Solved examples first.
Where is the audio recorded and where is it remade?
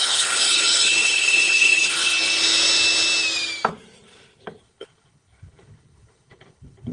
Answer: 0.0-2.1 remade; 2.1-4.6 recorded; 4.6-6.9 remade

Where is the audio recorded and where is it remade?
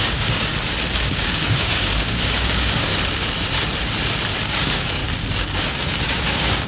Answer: 0.0-0.5 remade; 0.5-1.1 recorded; 1.1-2.9 remade; 2.9-4.4 recorded; 4.4-5.0 remade; 5.0-5.7 recorded; 5.7-6.7 remade